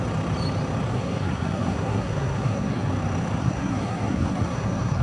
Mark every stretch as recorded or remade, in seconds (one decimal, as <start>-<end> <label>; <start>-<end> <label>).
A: 0.0-0.9 recorded; 0.9-2.9 remade; 2.9-3.4 recorded; 3.4-5.0 remade